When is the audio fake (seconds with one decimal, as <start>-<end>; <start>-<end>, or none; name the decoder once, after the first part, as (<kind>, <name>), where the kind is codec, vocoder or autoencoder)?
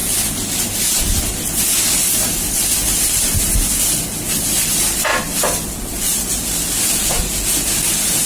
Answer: none